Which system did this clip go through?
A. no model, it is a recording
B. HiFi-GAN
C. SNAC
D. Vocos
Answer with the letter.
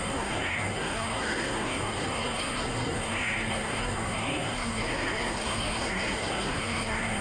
C